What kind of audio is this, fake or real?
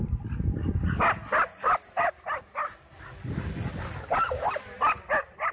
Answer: real